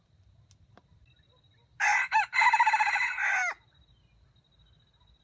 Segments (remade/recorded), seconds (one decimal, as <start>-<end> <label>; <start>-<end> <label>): 0.0-5.2 recorded